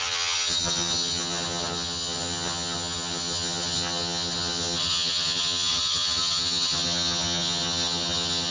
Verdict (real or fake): fake